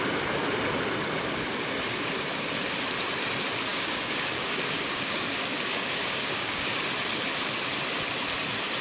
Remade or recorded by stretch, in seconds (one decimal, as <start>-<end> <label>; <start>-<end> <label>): 0.0-3.7 recorded; 3.7-6.8 remade; 6.8-8.8 recorded